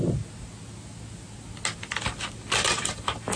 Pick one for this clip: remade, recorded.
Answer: recorded